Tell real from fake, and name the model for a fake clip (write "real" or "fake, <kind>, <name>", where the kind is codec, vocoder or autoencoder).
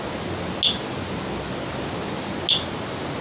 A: real